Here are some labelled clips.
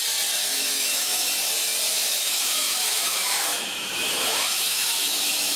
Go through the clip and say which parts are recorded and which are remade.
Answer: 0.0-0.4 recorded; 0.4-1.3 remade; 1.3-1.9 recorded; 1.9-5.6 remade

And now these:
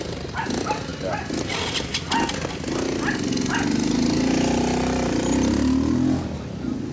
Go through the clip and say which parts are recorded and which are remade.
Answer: 0.0-6.9 recorded

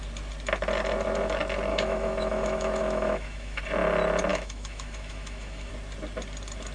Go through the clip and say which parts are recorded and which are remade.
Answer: 0.0-1.7 recorded; 1.7-3.6 remade; 3.6-4.3 recorded; 4.3-5.7 remade; 5.7-6.7 recorded

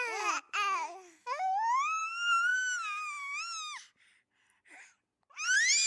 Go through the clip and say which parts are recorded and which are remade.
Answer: 0.0-1.2 recorded; 1.2-2.0 remade; 2.0-5.9 recorded